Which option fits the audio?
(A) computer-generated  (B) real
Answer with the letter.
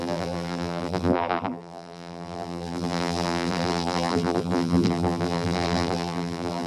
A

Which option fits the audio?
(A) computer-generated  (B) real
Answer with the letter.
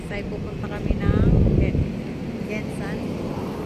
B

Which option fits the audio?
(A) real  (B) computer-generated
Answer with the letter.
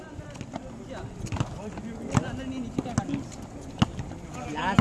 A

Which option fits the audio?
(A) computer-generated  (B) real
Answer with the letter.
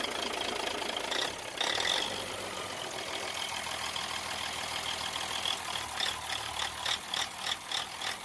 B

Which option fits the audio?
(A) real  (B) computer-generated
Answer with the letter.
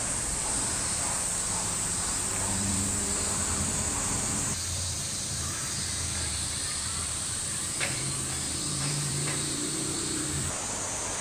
B